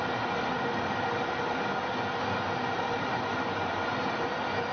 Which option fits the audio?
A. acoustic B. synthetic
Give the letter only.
A